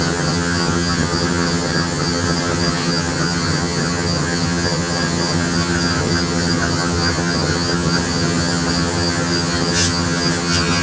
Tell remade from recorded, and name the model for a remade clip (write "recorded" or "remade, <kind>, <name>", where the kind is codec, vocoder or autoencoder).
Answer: remade, vocoder, HiFi-GAN